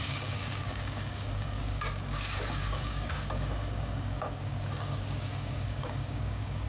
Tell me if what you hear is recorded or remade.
remade